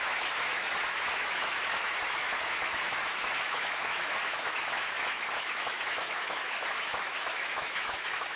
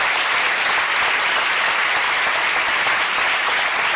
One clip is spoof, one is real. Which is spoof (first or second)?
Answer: first